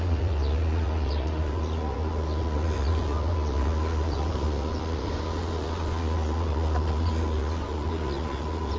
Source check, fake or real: fake